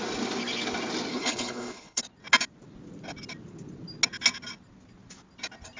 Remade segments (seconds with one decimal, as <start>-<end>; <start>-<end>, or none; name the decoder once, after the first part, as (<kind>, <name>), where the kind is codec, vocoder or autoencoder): 1.1-2.0 (codec, HILCodec)